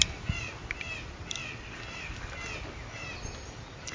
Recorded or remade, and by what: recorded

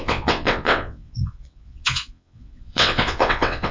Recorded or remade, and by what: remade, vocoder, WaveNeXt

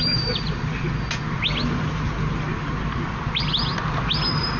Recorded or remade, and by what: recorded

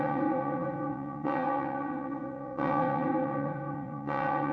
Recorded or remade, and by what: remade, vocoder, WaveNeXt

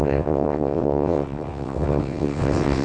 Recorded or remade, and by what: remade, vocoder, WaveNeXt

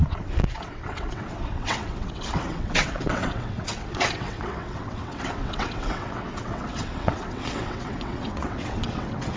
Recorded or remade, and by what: remade, vocoder, WaveNeXt